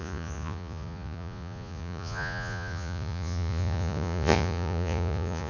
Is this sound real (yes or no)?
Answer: no